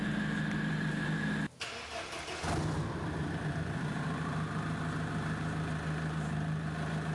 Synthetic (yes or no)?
no